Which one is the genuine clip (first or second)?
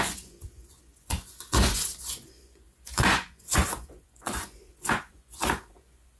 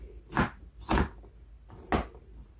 second